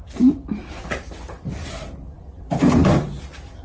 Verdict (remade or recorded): recorded